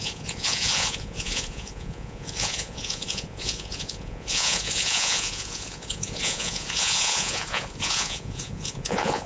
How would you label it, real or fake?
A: fake